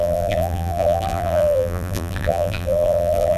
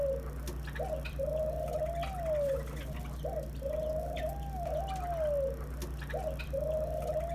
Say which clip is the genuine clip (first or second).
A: second